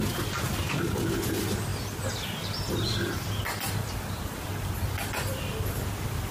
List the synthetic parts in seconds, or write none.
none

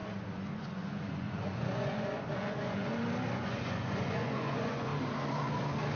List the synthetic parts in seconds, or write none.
0.0-2.9 (vocoder, Vocos); 3.4-4.9